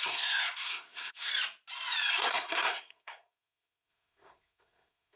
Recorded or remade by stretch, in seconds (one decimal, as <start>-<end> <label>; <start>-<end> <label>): 0.0-1.3 remade; 1.3-2.1 recorded; 2.1-5.2 remade